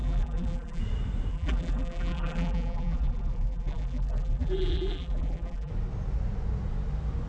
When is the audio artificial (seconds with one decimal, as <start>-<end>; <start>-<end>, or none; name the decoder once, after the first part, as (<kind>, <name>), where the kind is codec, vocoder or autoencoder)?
0.0-0.8 (vocoder, BigVGAN v2); 1.3-5.7